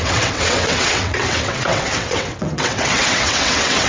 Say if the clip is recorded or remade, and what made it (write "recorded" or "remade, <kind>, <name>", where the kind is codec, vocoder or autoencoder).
remade, vocoder, WaveNeXt